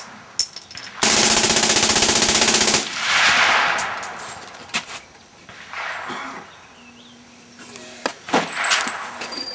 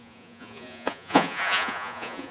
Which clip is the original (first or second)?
first